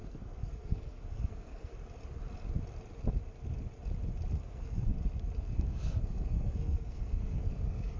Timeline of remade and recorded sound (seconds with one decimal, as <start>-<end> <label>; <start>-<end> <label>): 0.0-1.7 remade; 1.7-4.4 recorded; 4.4-4.9 remade; 4.9-5.4 recorded; 5.4-8.0 remade